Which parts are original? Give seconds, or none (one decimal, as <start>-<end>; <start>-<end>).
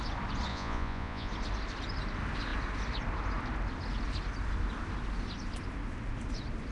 0.0-0.5; 1.3-6.7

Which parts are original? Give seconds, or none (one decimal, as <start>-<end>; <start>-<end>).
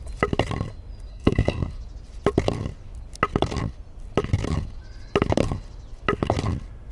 0.0-1.1; 1.7-6.9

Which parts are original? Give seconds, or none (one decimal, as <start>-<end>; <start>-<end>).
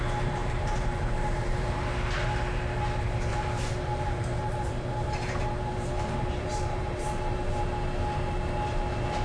0.0-0.4; 1.8-3.3; 7.6-9.2